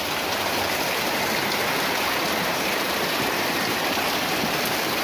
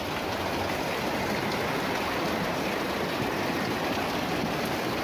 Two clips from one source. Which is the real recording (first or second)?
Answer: second